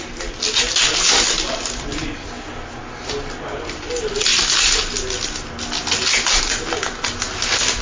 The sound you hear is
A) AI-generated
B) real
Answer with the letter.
B